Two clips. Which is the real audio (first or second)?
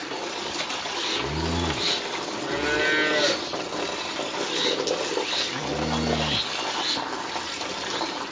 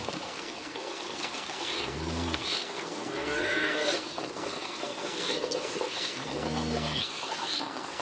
first